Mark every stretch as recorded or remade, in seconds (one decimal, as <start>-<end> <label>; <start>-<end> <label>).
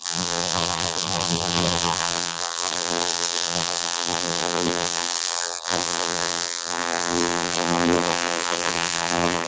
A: 0.0-9.5 remade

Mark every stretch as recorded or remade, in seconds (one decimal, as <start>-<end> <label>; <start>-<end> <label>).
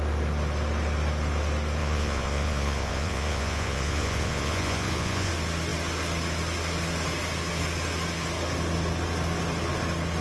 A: 0.0-1.8 recorded; 1.8-5.3 remade; 5.3-10.2 recorded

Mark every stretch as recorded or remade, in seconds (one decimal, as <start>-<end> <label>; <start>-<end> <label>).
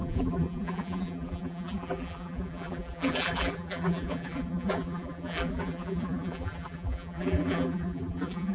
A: 0.0-8.5 remade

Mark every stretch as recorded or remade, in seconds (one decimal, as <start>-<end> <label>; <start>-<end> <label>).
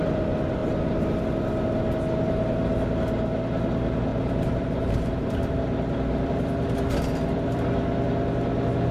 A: 0.0-0.6 recorded; 0.6-1.2 remade; 1.2-4.1 recorded; 4.1-7.6 remade; 7.6-8.9 recorded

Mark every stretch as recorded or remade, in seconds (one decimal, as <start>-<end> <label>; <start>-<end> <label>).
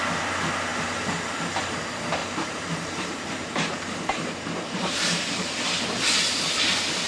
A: 0.0-0.7 recorded; 0.7-1.7 remade; 1.7-2.2 recorded; 2.2-5.8 remade; 5.8-7.1 recorded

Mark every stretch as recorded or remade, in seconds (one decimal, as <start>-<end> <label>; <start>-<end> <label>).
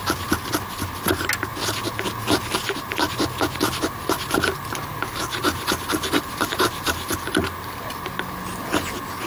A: 0.0-9.3 recorded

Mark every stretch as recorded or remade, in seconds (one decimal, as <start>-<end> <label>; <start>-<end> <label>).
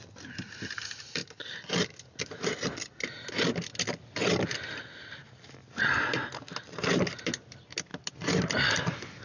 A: 0.0-9.2 recorded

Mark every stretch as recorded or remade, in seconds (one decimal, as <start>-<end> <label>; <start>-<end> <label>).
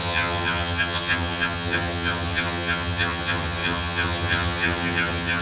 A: 0.0-5.4 remade